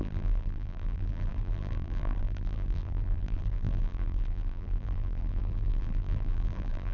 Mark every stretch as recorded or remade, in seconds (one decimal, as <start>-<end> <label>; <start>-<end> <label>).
0.0-6.9 remade